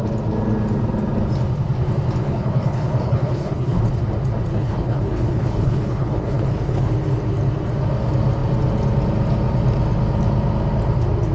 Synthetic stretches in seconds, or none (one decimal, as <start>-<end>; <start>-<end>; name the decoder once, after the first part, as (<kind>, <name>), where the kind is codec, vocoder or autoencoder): 2.2-3.8 (codec, HILCodec); 4.5-6.9